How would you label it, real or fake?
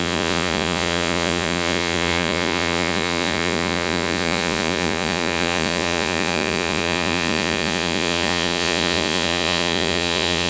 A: fake